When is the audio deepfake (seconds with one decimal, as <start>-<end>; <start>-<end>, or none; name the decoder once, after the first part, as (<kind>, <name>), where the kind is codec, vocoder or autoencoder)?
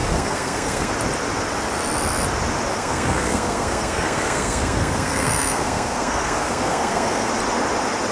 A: 0.0-0.9 (codec, SNAC); 2.7-7.3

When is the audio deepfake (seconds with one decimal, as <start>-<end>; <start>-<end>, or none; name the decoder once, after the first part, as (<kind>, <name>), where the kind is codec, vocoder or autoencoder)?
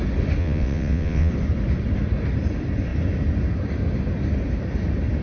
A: 0.4-1.3 (vocoder, WaveNeXt)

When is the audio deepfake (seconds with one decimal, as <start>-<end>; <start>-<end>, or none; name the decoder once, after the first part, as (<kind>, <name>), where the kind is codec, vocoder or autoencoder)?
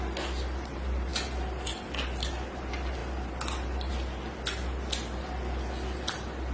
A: none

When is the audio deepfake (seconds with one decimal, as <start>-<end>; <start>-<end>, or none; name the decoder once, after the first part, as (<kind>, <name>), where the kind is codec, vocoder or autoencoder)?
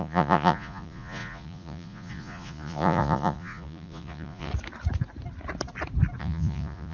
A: 0.0-4.5 (vocoder, Vocos); 6.2-6.9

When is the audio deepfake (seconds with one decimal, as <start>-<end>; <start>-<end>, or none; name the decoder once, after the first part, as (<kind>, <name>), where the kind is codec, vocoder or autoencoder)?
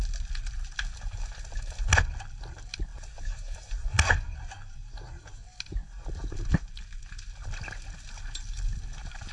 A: none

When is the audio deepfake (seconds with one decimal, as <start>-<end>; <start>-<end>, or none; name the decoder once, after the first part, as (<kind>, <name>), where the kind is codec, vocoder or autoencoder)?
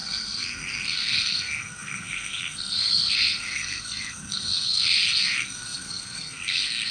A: 0.0-6.9 (codec, SNAC)